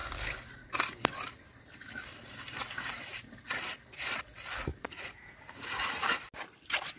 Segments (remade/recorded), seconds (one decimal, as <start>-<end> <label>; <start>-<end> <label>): 0.0-4.7 recorded; 4.7-6.2 remade; 6.2-7.0 recorded